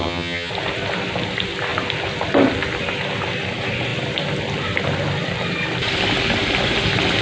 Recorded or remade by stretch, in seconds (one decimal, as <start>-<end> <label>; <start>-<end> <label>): 0.0-0.5 remade; 0.5-7.2 recorded